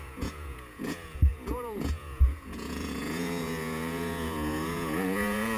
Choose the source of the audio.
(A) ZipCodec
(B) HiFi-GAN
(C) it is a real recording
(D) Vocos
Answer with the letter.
D